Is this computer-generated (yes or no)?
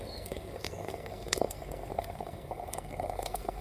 yes